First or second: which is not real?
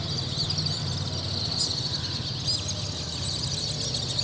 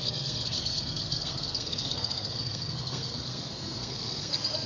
second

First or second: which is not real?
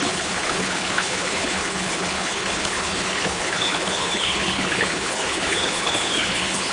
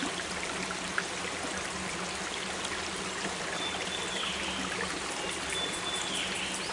first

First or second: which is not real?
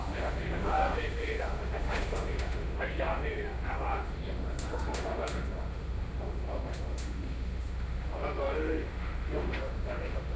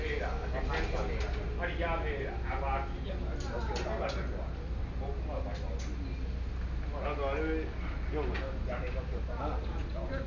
first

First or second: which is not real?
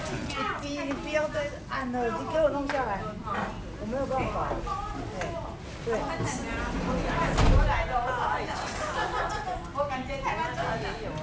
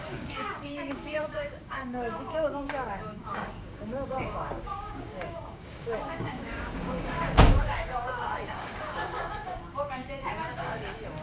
second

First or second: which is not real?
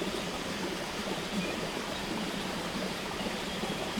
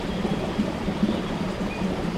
first